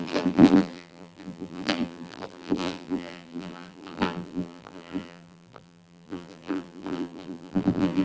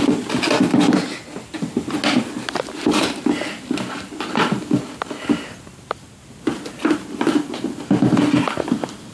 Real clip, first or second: second